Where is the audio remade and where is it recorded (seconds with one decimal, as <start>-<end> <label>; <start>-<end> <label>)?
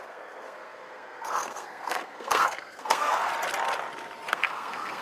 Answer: 0.0-3.3 remade; 3.3-4.3 recorded; 4.3-5.0 remade